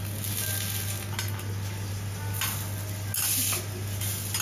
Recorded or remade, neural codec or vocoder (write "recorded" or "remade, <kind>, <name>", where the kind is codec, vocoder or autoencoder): recorded